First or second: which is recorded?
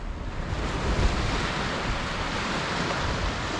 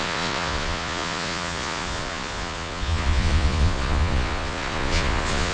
first